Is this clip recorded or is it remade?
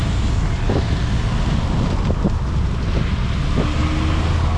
recorded